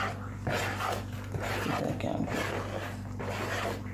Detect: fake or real real